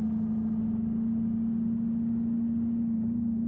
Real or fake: real